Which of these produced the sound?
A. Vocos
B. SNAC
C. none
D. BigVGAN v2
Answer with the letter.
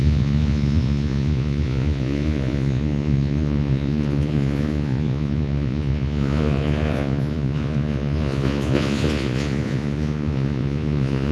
A